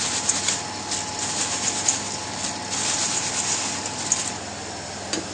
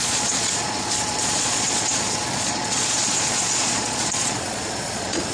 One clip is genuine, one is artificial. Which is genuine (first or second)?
first